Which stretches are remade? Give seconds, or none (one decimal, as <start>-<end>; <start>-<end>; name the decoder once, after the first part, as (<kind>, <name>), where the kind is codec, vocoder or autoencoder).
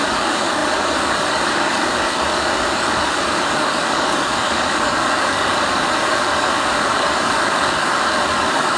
0.0-8.8 (codec, DAC)